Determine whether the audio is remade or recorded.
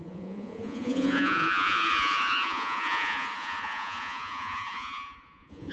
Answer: remade